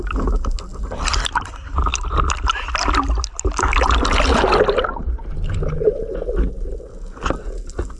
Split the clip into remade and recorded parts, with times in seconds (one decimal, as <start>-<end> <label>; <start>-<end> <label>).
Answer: 0.0-8.0 recorded